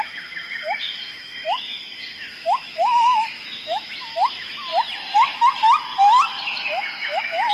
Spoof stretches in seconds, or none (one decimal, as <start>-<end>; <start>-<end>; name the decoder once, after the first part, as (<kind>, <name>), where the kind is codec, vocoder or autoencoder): 0.0-4.7 (autoencoder, DAC-VAE); 6.4-7.5